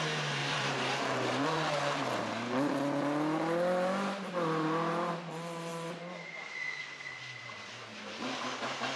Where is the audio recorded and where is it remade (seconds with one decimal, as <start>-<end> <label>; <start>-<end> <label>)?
0.0-0.4 recorded; 0.4-2.0 remade; 2.0-9.0 recorded